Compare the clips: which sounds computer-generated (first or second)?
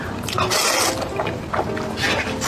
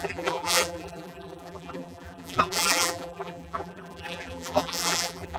second